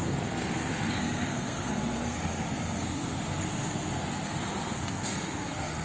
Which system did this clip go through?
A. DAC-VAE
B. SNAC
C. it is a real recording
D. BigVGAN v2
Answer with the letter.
B